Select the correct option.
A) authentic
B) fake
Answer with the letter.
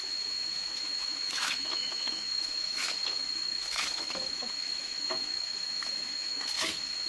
B